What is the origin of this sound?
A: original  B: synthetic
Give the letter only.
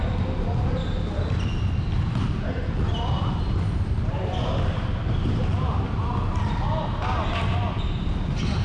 A